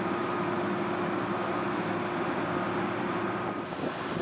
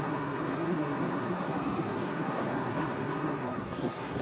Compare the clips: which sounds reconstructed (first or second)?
second